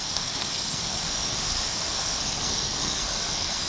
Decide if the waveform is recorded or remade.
remade